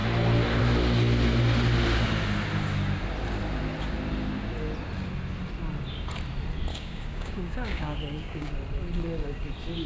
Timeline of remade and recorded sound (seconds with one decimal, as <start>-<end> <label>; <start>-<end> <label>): 0.0-6.7 recorded; 6.7-8.5 remade; 8.5-9.9 recorded